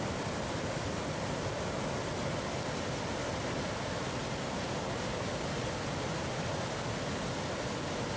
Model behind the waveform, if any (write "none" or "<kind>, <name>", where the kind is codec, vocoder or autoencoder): none